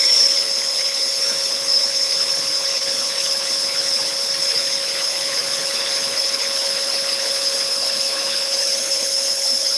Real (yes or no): no